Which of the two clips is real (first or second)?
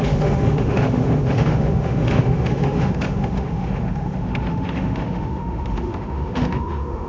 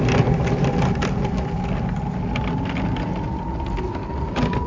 second